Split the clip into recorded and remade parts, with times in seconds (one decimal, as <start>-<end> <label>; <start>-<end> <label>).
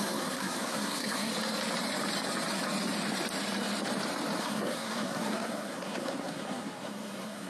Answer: 0.0-1.3 remade; 1.3-4.4 recorded; 4.4-7.5 remade